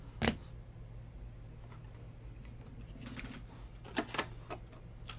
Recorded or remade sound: recorded